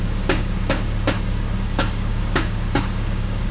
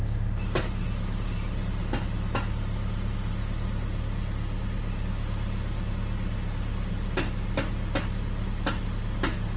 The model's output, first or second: first